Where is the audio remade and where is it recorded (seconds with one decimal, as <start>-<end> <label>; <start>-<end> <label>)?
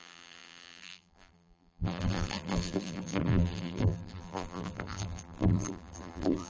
0.0-6.5 remade